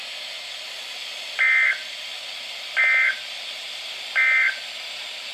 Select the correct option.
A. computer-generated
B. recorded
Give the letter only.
B